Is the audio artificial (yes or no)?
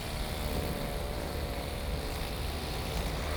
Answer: no